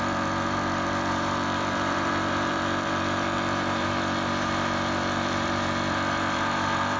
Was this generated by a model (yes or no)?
yes